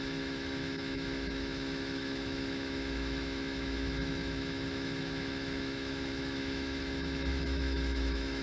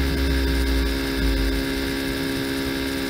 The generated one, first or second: first